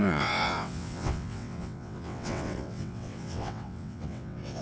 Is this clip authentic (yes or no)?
no